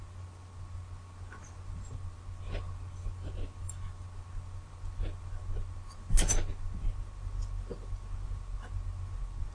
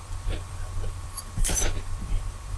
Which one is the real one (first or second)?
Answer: first